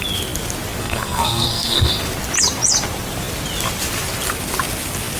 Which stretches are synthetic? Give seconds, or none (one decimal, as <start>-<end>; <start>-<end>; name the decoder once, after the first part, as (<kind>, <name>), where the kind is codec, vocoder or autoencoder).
0.8-1.9 (codec, SNAC)